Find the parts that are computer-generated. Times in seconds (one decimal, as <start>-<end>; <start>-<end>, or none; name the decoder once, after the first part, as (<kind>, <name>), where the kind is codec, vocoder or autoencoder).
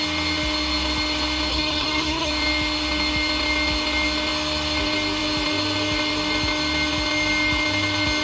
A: 1.5-2.3 (codec, SNAC)